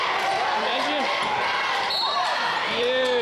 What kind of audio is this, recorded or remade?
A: remade